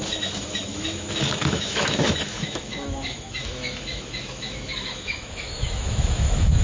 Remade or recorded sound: remade